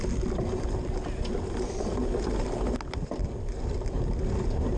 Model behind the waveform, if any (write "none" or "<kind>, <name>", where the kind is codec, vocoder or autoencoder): none